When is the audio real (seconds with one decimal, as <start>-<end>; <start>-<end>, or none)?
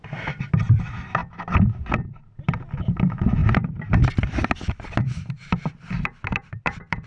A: 1.2-2.4